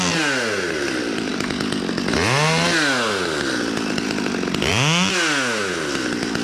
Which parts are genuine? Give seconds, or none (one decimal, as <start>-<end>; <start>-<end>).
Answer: 0.0-6.4